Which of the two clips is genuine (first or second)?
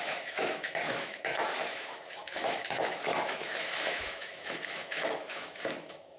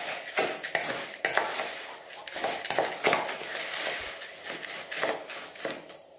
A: second